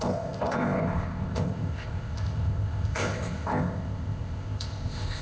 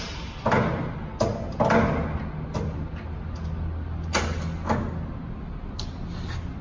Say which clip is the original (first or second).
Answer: second